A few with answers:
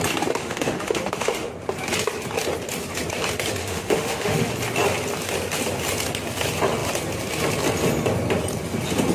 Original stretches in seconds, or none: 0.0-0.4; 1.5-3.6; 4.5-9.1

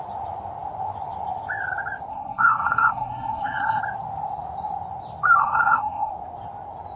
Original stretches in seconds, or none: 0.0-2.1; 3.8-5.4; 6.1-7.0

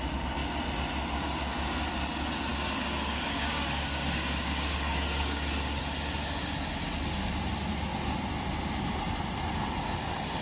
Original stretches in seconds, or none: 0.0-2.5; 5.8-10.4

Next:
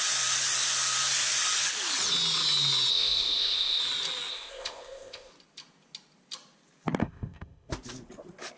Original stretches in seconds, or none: 0.0-2.9; 3.8-4.3; 5.3-7.0; 7.7-8.6